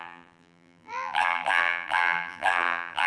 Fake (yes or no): yes